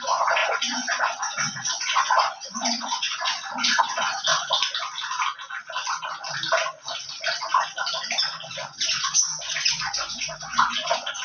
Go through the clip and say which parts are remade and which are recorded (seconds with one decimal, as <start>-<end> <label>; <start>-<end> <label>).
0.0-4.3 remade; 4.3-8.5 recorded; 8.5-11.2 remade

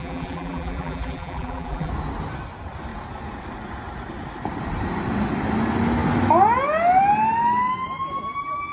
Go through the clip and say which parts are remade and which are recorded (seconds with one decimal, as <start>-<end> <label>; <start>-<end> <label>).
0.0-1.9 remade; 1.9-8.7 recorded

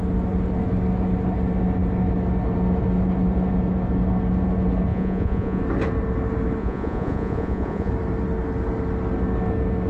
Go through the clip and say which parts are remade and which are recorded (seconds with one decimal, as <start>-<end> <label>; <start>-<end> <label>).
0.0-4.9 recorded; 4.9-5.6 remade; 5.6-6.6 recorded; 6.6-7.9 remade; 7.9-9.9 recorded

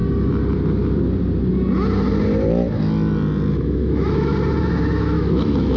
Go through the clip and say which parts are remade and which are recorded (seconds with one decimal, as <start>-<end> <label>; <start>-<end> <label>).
0.0-3.5 recorded; 3.5-4.3 remade; 4.3-4.9 recorded; 4.9-5.8 remade